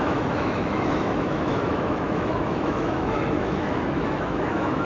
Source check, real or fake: fake